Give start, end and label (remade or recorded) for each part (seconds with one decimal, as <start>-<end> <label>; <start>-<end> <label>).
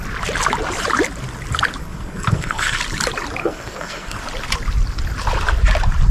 0.0-1.8 recorded; 1.8-2.8 remade; 2.8-3.4 recorded; 3.4-4.2 remade; 4.2-6.1 recorded